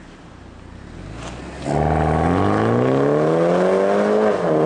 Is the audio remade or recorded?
recorded